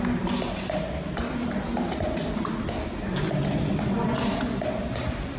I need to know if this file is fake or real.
real